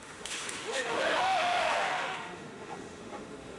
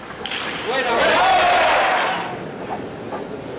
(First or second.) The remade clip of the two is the first